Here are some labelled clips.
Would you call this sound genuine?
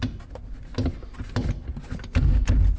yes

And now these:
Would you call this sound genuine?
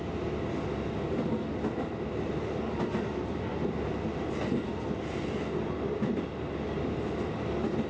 yes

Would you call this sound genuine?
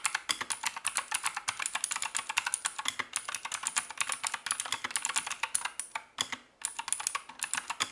yes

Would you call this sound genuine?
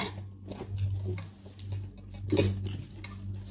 yes